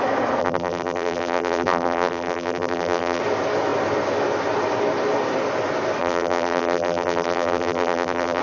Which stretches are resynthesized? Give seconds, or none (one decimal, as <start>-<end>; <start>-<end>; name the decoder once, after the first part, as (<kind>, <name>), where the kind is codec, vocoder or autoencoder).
0.4-3.2 (vocoder, BigVGAN v2); 6.0-8.4